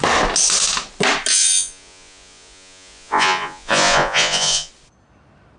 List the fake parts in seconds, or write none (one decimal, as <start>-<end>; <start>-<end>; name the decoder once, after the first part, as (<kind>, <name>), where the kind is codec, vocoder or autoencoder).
1.3-4.7 (vocoder, Vocos)